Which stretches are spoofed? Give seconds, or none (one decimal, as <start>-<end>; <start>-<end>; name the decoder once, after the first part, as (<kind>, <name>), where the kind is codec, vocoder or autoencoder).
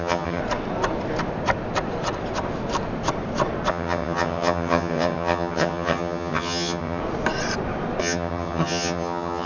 0.0-0.4 (vocoder, HiFi-GAN); 3.7-7.0; 8.0-9.5